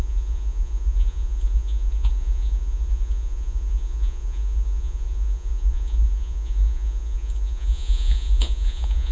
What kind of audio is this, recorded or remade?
remade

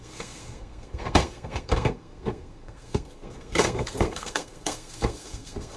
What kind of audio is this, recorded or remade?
remade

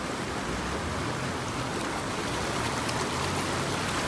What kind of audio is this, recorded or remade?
recorded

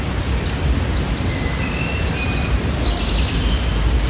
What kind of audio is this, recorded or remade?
recorded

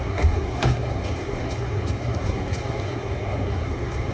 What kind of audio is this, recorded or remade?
remade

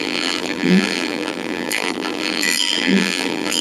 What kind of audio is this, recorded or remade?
remade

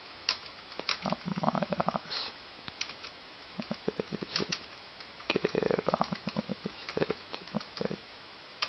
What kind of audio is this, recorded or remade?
remade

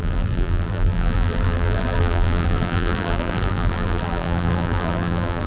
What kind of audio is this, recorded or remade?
remade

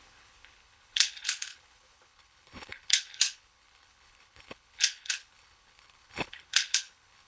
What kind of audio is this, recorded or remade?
remade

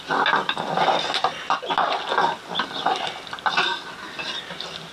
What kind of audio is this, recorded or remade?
recorded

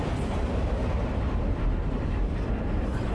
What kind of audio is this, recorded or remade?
recorded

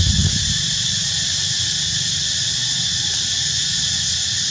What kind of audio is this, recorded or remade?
recorded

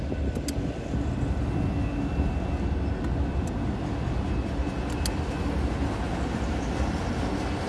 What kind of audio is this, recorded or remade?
recorded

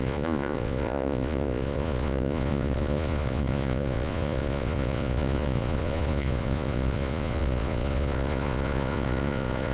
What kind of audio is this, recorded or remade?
remade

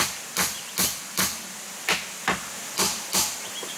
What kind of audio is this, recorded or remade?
recorded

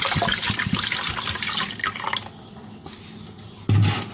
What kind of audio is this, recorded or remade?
recorded